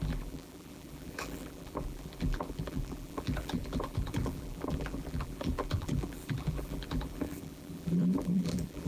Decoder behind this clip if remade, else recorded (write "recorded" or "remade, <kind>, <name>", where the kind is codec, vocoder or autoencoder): remade, vocoder, BigVGAN v2